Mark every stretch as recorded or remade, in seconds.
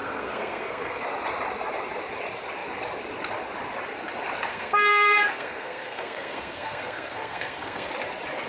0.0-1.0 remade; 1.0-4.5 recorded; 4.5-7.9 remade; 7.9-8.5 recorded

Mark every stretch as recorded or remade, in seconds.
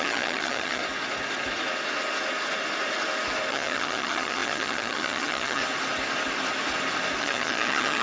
0.0-0.8 remade; 0.8-3.5 recorded; 3.5-5.6 remade; 5.6-7.2 recorded; 7.2-8.0 remade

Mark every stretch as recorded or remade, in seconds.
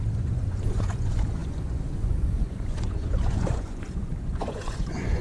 0.0-5.2 remade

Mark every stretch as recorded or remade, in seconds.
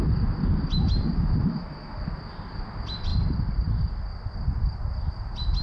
0.0-1.4 recorded; 1.4-2.0 remade; 2.0-5.6 recorded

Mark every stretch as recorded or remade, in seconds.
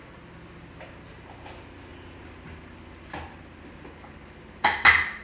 0.0-5.2 recorded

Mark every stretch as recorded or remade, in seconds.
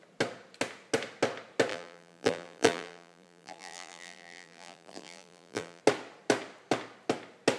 0.0-1.7 recorded; 1.7-5.8 remade; 5.8-7.6 recorded